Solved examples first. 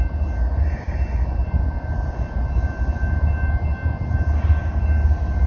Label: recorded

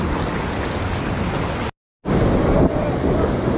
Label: recorded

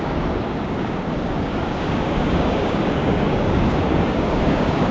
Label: remade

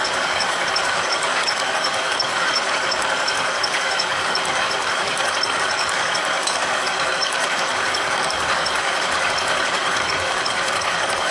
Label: remade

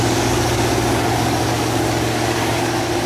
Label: remade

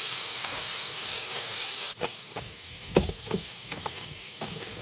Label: remade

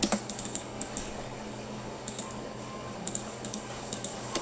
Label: remade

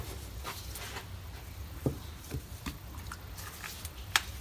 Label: recorded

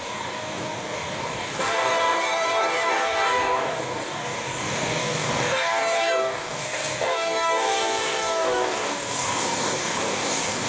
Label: remade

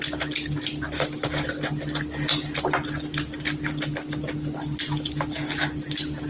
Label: recorded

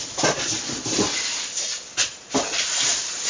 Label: recorded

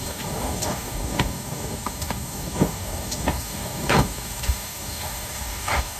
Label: remade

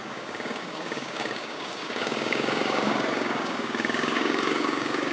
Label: remade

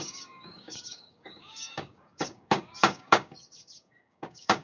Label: remade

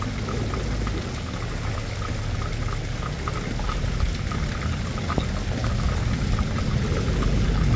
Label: recorded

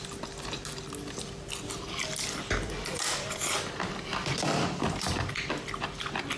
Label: recorded